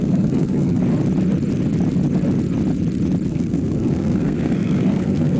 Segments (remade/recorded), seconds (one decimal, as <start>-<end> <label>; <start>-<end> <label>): 0.0-0.8 remade; 0.8-3.3 recorded; 3.3-5.4 remade